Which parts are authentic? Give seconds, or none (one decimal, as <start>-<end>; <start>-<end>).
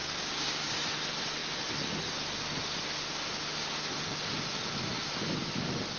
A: 0.7-6.0